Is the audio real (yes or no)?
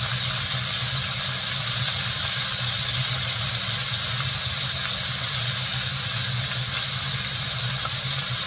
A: yes